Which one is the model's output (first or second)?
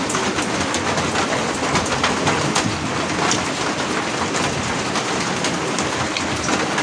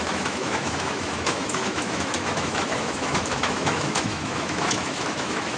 second